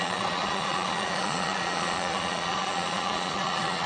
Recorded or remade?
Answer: remade